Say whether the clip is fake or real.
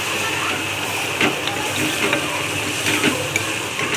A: real